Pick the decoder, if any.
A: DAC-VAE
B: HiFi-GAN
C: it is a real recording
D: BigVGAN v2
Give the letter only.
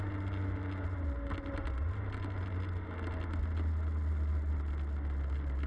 C